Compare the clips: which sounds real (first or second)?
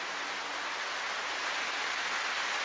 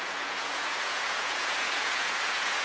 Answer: first